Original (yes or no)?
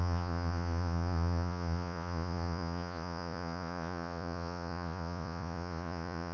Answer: no